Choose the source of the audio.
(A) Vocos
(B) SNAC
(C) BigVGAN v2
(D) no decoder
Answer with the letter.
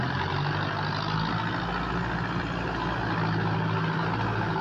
D